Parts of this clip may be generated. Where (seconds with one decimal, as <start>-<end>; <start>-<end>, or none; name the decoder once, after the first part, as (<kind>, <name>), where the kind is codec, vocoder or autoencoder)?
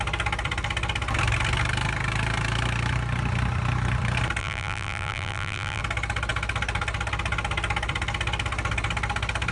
4.4-5.8 (vocoder, BigVGAN v2)